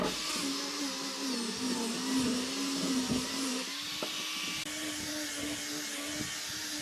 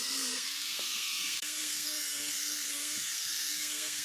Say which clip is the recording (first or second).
first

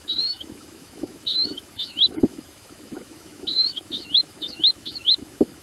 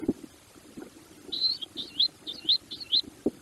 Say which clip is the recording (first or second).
second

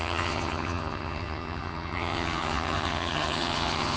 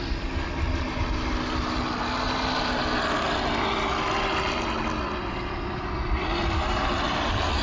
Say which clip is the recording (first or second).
second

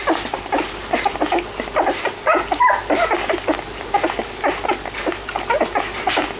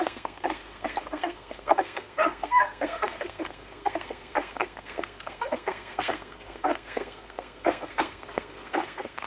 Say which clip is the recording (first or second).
first